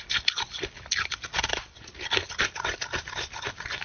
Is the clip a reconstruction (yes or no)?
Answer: no